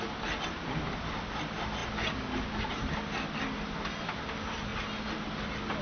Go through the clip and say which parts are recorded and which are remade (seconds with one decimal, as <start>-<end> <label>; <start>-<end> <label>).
0.0-5.8 recorded